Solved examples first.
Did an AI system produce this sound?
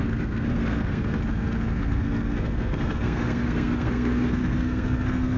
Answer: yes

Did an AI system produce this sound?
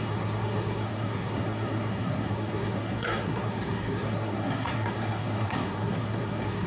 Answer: yes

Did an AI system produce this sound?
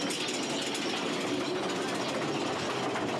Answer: no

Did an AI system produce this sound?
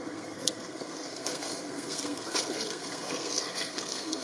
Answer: yes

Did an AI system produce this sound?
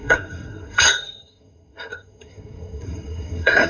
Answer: yes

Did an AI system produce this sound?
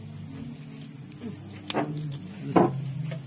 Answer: no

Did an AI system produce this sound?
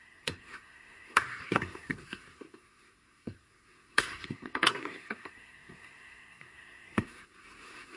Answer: yes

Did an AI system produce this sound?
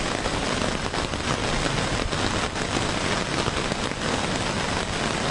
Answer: no